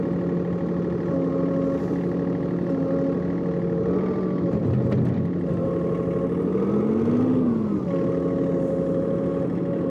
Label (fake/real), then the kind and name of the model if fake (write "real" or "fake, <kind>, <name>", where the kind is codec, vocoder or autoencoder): real